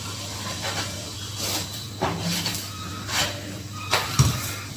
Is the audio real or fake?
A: fake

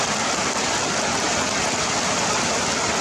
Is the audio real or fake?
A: fake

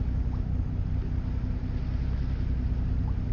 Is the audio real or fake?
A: real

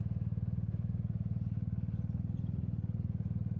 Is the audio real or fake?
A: real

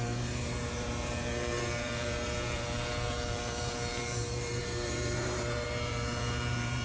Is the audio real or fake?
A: fake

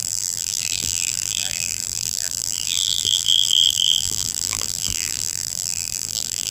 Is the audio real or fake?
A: fake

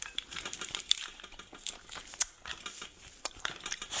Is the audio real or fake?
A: fake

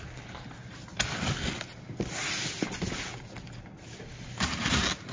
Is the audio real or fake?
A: real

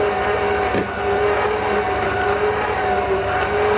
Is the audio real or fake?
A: real